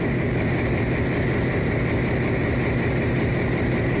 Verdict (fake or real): real